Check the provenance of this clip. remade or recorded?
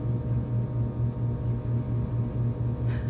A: recorded